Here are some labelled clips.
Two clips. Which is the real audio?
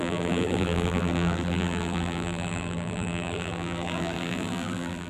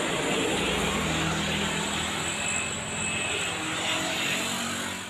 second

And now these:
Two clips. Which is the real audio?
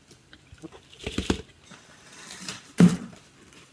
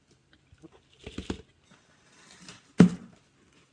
second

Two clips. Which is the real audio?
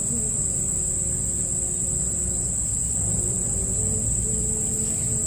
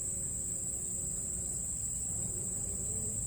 first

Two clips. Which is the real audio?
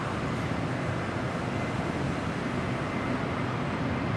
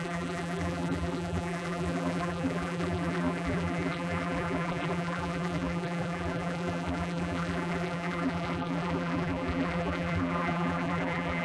first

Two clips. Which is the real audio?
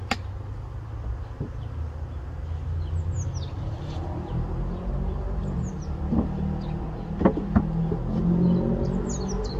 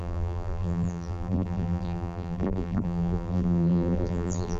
first